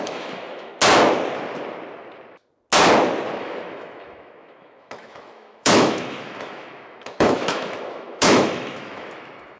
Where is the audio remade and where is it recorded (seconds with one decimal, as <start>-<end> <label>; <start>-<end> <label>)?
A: 0.0-0.7 remade; 0.7-3.4 recorded; 3.4-9.6 remade